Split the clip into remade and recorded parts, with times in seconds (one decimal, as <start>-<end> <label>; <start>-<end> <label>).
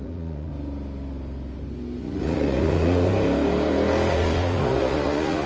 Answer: 0.0-0.5 remade; 0.5-2.0 recorded; 2.0-3.1 remade; 3.1-4.1 recorded; 4.1-5.5 remade